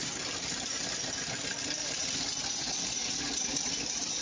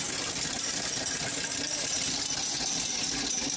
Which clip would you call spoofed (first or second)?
first